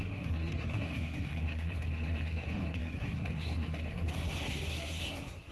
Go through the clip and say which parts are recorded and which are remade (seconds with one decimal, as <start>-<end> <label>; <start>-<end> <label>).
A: 0.0-5.5 remade